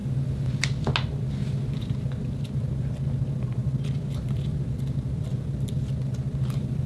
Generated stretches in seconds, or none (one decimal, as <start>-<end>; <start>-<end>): none